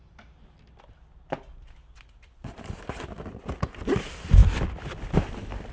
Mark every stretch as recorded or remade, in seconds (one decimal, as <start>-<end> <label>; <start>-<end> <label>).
0.0-5.7 recorded